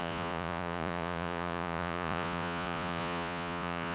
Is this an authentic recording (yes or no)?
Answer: no